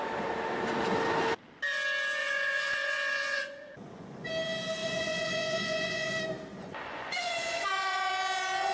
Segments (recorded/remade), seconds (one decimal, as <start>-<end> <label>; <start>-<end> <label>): 0.0-2.2 recorded; 2.2-4.3 remade; 4.3-4.8 recorded; 4.8-6.1 remade; 6.1-6.6 recorded; 6.6-8.1 remade; 8.1-8.7 recorded